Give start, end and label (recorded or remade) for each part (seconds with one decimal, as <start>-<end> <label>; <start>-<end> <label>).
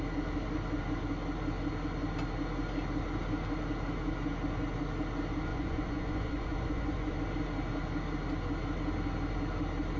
0.0-5.5 recorded; 5.5-7.1 remade; 7.1-10.0 recorded